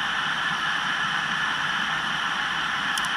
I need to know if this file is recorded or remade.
remade